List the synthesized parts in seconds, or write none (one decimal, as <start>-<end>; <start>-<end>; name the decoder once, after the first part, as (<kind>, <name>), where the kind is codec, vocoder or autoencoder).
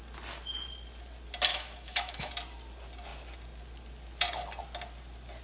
1.5-2.3 (autoencoder, DAC-VAE)